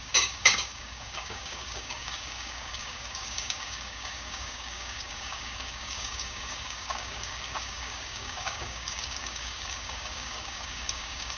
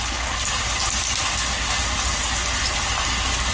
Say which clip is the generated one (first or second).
first